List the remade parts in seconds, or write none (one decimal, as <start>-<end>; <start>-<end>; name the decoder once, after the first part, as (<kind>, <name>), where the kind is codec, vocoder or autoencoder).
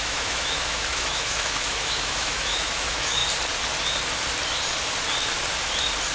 0.0-3.2 (autoencoder, DAC-VAE)